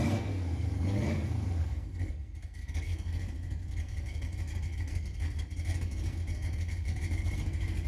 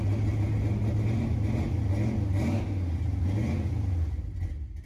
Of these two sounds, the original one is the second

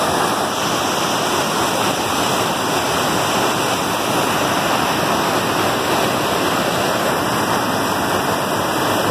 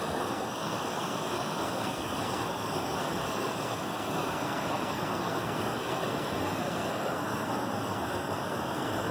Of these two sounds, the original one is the first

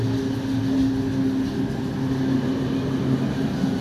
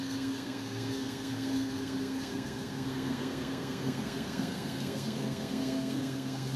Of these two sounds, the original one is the first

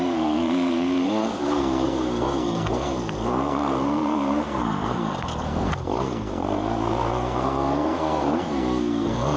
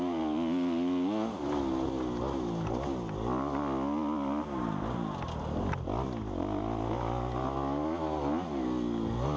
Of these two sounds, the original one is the second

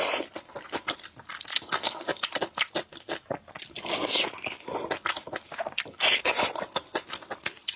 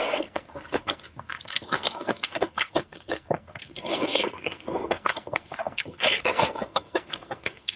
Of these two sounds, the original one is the first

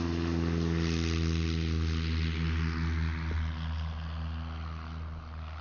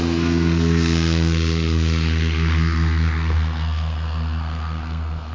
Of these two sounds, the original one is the first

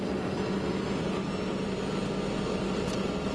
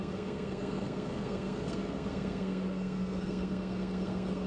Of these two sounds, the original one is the first